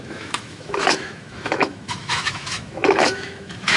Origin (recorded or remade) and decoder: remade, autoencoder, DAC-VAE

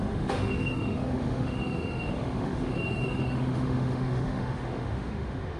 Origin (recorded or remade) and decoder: remade, autoencoder, DAC-VAE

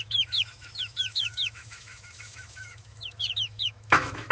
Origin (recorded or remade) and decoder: remade, autoencoder, DAC-VAE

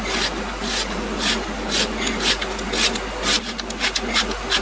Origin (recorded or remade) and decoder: recorded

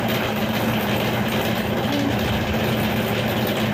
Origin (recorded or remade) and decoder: recorded